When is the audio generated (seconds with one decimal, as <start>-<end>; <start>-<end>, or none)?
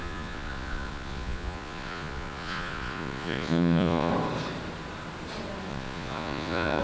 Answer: 0.0-4.1; 5.7-6.8